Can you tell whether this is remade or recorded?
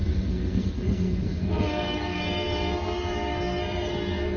remade